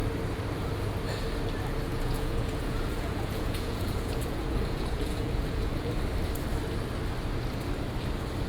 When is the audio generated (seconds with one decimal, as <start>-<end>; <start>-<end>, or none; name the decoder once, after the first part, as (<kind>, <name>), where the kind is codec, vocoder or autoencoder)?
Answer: 1.9-5.9 (vocoder, Vocos)